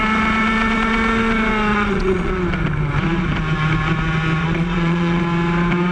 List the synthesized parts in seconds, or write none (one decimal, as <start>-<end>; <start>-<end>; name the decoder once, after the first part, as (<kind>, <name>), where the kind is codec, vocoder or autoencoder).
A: 1.7-2.3 (vocoder, Vocos); 4.4-5.2